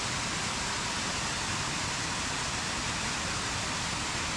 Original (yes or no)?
yes